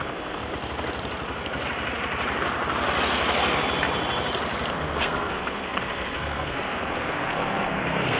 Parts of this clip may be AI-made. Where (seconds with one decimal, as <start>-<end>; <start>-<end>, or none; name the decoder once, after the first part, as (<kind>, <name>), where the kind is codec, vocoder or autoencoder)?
0.0-0.5 (codec, SNAC); 4.7-8.2